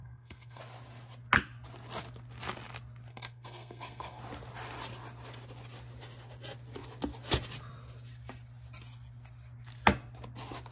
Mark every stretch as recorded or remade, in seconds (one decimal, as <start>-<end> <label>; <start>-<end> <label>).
0.0-0.6 remade; 0.6-3.1 recorded; 3.1-4.2 remade; 4.2-10.7 recorded